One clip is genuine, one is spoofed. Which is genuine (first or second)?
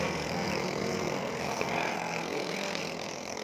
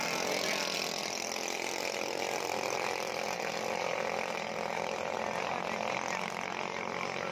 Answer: second